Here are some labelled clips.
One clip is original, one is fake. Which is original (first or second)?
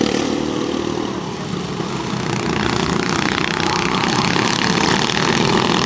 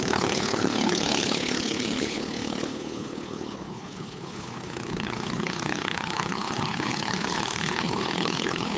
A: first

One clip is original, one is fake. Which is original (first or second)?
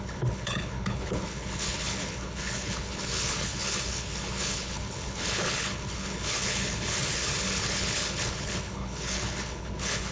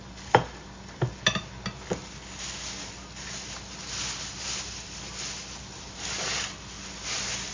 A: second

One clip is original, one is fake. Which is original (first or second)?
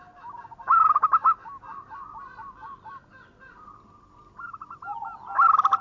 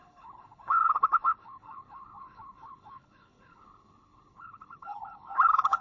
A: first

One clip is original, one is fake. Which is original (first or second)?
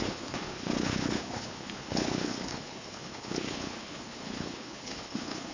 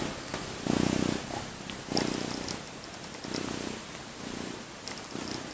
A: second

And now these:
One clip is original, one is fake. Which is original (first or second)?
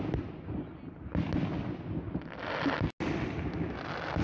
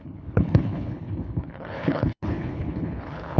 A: first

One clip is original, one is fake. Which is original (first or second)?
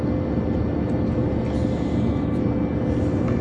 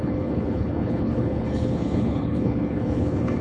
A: first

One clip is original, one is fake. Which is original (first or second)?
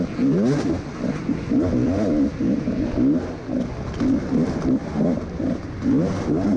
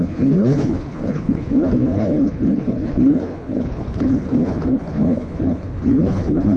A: first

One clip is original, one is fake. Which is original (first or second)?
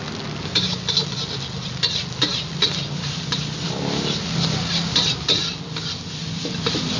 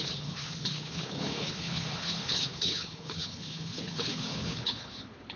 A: first